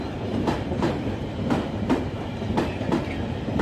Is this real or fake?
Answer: real